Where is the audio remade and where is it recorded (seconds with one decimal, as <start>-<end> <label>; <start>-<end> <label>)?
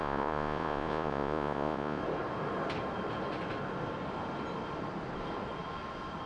0.0-2.0 remade; 2.0-6.3 recorded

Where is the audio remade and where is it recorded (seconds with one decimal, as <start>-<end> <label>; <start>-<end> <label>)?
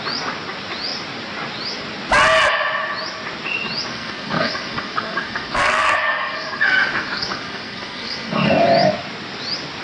0.0-3.9 recorded; 3.9-8.5 remade; 8.5-9.8 recorded